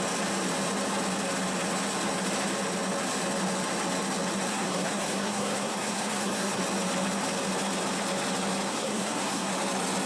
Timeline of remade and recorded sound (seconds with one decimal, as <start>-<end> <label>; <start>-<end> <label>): 0.0-4.5 recorded; 4.5-6.6 remade; 6.6-8.7 recorded; 8.7-9.5 remade; 9.5-10.1 recorded